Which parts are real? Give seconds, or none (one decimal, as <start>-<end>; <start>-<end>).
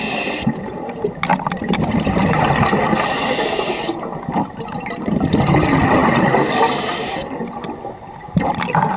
0.0-9.0